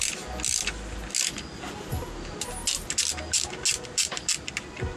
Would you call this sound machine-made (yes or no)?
no